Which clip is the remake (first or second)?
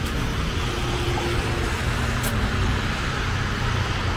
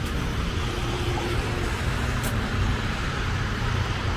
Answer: second